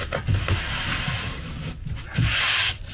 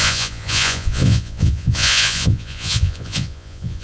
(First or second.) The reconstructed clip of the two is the second